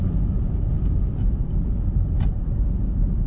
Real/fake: fake